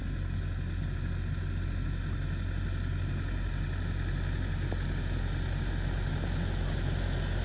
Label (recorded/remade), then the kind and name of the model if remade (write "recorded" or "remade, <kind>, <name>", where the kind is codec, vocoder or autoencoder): recorded